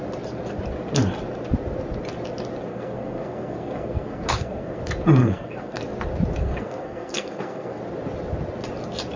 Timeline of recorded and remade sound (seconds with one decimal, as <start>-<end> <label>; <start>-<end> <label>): 0.0-2.7 recorded; 2.7-4.8 remade; 4.8-5.2 recorded; 5.2-5.8 remade; 5.8-6.4 recorded; 6.4-7.8 remade; 7.8-9.2 recorded